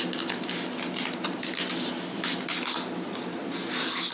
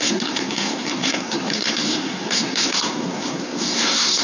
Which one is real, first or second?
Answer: first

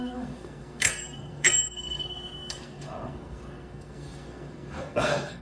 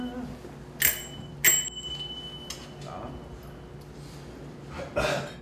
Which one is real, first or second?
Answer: second